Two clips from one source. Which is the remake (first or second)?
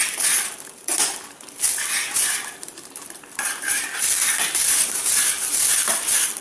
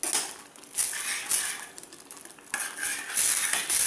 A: first